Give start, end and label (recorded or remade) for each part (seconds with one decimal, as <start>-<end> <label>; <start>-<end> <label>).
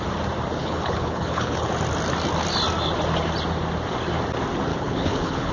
0.0-0.6 recorded; 0.6-1.7 remade; 1.7-4.7 recorded; 4.7-5.5 remade